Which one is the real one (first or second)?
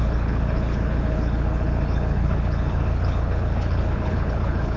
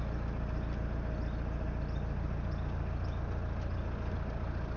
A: second